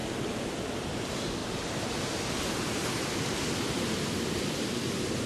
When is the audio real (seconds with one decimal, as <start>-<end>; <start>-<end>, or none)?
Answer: 0.0-5.3